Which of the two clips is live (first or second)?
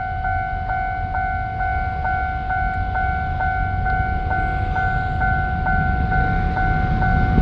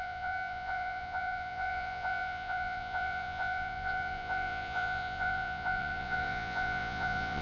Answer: first